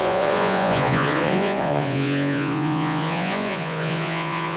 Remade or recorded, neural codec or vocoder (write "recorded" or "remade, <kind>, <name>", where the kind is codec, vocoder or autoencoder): remade, vocoder, Vocos